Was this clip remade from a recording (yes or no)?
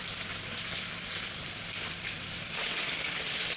yes